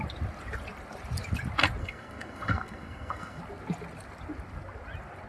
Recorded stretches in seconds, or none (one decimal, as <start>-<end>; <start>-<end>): 0.0-1.8; 3.4-5.3